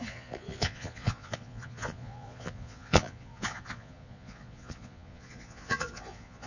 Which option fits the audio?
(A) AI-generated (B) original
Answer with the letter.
A